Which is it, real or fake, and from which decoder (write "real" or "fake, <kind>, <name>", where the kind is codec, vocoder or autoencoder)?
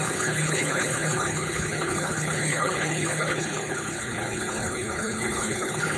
fake, codec, HILCodec